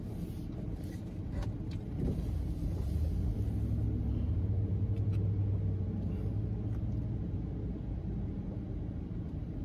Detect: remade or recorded recorded